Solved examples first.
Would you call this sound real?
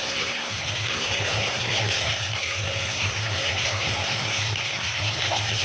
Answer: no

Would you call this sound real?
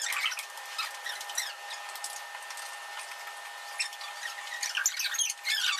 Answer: yes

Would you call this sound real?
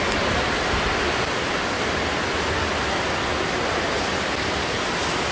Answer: yes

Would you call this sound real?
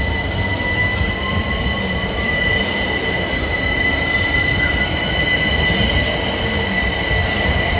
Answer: yes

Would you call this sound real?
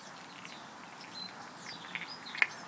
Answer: yes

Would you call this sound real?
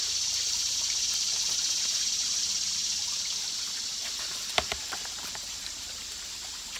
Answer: no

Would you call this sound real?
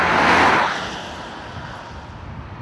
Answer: yes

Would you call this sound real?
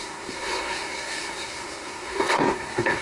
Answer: no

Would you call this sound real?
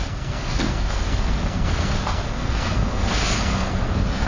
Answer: no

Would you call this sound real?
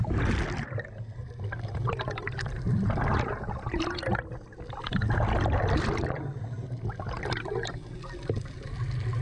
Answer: yes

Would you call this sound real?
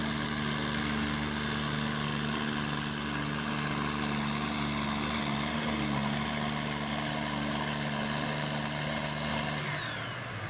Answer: yes